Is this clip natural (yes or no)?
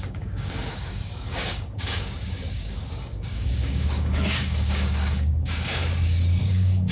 no